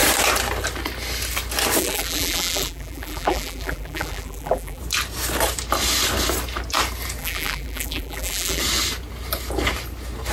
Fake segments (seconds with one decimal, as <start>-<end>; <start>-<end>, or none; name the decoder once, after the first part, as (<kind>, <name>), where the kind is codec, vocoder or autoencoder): 1.8-4.8 (vocoder, BigVGAN v2); 7.2-8.6